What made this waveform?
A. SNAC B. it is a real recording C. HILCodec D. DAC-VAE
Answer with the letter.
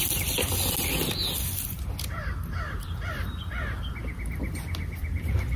B